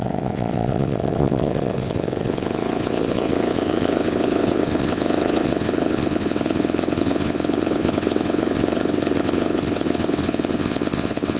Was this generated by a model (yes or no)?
yes